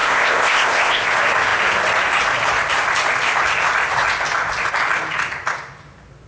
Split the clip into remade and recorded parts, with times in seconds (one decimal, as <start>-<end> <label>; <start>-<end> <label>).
0.0-1.1 remade; 1.1-6.3 recorded